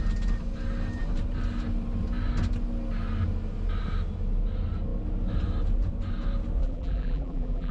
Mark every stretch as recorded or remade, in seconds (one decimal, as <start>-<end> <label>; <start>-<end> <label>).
0.0-6.6 recorded; 6.6-7.7 remade